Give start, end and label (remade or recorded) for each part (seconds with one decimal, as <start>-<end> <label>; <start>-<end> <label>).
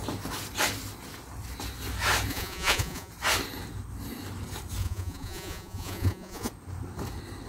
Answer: 0.0-2.3 recorded; 2.3-3.1 remade; 3.1-4.8 recorded; 4.8-6.5 remade; 6.5-7.5 recorded